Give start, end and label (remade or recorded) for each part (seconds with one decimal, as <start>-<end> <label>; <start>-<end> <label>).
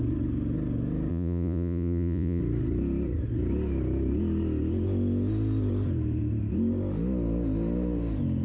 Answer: 0.0-1.1 recorded; 1.1-2.4 remade; 2.4-8.4 recorded